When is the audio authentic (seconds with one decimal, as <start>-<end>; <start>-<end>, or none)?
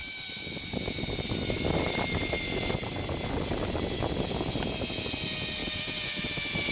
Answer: 3.8-5.6